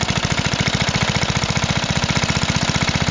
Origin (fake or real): fake